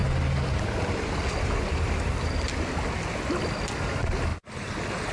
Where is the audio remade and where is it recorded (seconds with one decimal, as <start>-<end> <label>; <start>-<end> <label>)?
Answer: 0.0-5.1 recorded